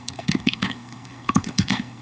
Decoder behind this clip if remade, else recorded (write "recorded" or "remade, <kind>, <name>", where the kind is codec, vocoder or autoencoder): remade, codec, SNAC